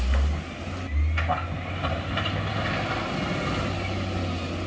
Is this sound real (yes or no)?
yes